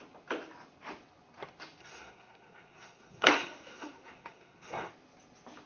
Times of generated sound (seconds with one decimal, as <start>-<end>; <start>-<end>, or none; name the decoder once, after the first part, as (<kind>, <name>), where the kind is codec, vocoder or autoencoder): 1.8-4.9 (codec, SNAC)